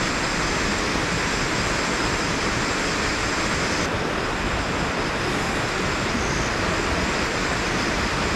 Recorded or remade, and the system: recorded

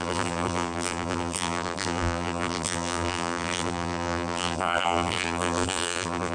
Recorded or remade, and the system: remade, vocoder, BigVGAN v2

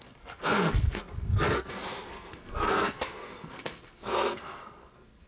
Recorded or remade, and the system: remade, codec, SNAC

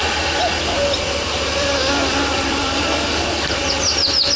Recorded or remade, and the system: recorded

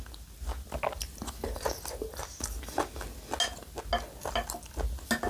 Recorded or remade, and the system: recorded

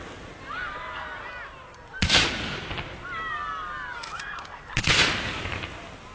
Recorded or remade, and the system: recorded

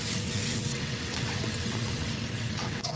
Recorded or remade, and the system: remade, vocoder, WaveNeXt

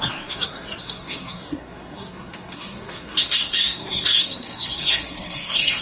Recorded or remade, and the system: remade, codec, SNAC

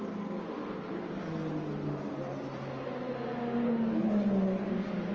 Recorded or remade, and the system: recorded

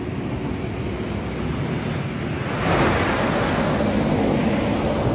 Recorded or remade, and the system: recorded